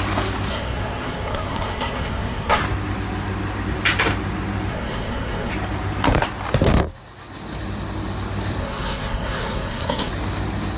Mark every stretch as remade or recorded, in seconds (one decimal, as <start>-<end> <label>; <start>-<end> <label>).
0.0-0.5 recorded; 0.5-2.6 remade; 2.6-4.7 recorded; 4.7-5.5 remade; 5.5-8.6 recorded; 8.6-10.1 remade; 10.1-10.8 recorded